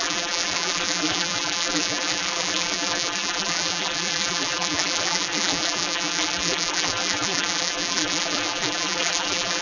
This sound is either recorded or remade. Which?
remade